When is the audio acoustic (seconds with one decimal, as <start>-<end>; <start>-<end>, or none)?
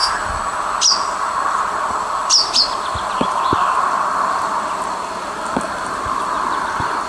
0.0-7.1